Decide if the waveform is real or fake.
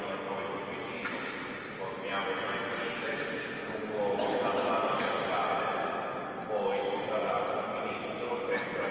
real